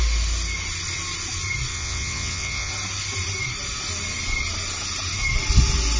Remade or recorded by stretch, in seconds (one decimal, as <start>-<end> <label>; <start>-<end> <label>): 0.0-1.7 recorded; 1.7-2.7 remade; 2.7-6.0 recorded